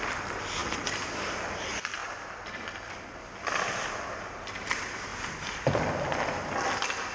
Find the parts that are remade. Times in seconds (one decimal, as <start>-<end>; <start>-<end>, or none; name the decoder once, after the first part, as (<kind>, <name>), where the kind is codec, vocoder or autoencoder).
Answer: 2.0-2.9 (vocoder, BigVGAN v2); 5.1-5.8